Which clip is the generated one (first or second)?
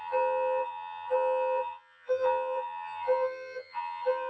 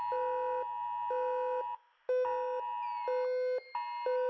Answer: first